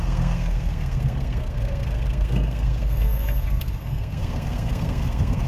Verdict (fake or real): fake